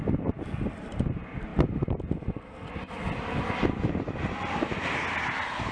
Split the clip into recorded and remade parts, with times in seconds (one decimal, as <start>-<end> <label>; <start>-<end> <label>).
0.0-5.7 recorded